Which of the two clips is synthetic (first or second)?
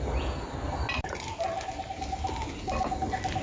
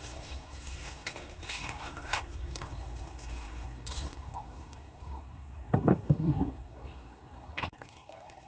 second